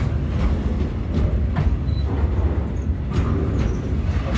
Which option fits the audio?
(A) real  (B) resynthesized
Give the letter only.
A